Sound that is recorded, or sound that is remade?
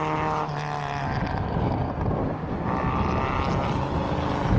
recorded